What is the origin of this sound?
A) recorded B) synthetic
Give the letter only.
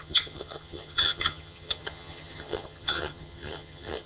B